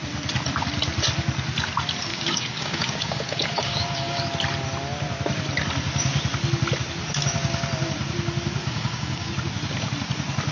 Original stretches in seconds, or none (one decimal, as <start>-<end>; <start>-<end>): 0.0-2.1; 4.2-8.6; 9.3-10.5

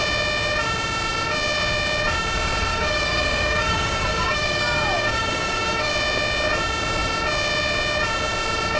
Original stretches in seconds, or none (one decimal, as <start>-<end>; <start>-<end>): 0.0-2.7; 5.9-8.8

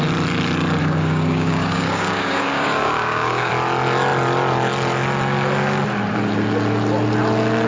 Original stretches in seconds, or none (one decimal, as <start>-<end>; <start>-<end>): 0.0-0.8; 3.5-7.7

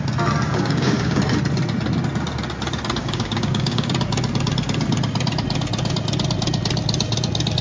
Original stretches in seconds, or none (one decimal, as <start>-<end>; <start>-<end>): 0.0-0.5; 1.2-3.0; 3.9-7.6

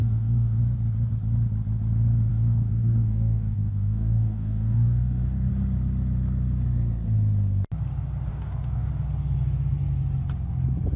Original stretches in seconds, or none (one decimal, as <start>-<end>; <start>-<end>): 0.6-2.3; 5.5-8.3; 8.9-11.0